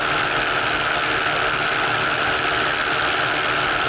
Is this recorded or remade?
recorded